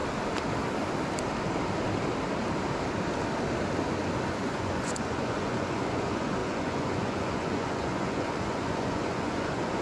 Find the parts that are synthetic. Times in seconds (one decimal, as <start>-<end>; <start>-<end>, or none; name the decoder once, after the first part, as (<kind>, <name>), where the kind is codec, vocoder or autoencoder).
4.3-9.8 (vocoder, Vocos)